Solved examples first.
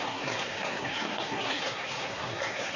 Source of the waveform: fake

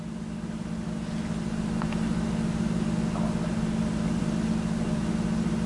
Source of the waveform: real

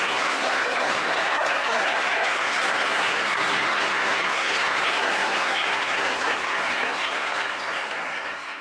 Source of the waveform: fake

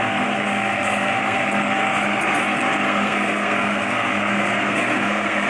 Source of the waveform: fake